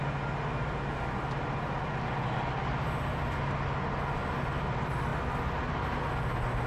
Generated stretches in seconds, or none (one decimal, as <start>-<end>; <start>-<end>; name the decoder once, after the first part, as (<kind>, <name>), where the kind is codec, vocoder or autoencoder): none

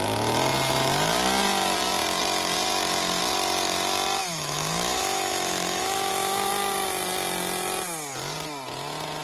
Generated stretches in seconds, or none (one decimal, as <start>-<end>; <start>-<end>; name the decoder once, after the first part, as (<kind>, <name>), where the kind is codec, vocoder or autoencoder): 4.2-6.5 (autoencoder, DAC-VAE)

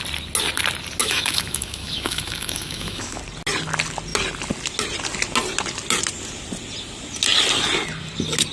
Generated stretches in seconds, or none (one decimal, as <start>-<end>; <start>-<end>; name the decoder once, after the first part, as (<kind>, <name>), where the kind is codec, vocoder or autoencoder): 1.0-3.2 (autoencoder, DAC-VAE)